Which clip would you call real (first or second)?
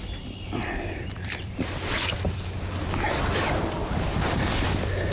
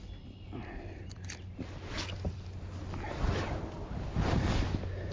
second